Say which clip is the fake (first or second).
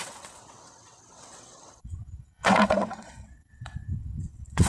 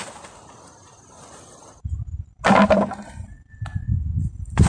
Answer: first